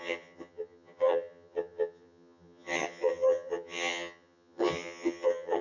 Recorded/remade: remade